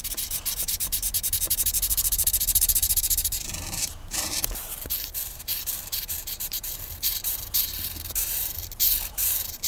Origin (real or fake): fake